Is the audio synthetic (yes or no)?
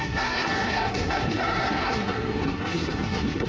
yes